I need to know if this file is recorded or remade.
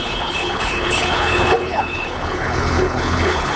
remade